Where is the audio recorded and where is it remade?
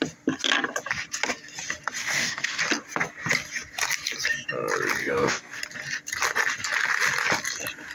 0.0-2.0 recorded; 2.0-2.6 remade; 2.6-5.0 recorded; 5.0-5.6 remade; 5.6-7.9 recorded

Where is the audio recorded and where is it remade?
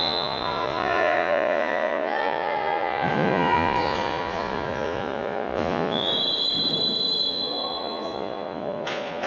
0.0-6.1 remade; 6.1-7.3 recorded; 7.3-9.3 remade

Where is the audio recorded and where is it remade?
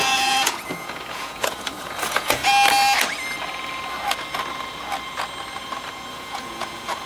0.0-2.4 remade; 2.4-6.1 recorded; 6.1-7.1 remade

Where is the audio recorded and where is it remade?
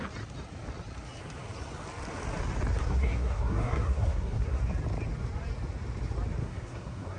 0.0-2.8 recorded; 2.8-4.6 remade; 4.6-6.4 recorded; 6.4-7.2 remade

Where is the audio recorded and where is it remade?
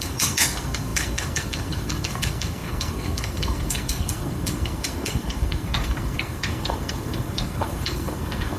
0.0-8.6 remade